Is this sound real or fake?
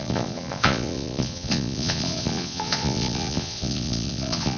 fake